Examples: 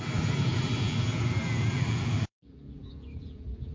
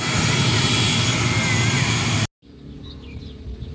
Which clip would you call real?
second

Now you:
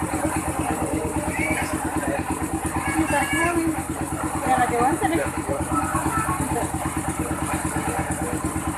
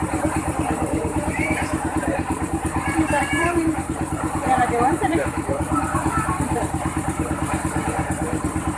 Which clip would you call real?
first